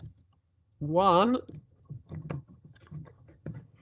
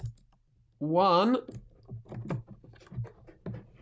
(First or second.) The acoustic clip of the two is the second